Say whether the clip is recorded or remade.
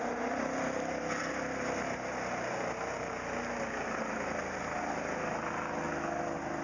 recorded